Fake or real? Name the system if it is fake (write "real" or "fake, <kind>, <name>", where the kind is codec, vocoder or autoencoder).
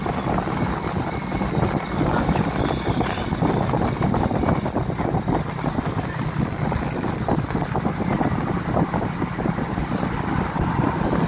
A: real